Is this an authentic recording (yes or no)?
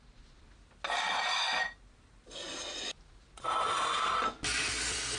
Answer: yes